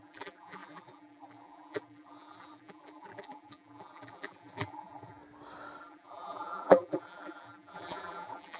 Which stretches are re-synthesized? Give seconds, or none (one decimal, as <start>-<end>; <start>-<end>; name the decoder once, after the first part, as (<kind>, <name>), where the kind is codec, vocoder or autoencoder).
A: 0.0-5.2 (vocoder, BigVGAN v2); 5.8-8.6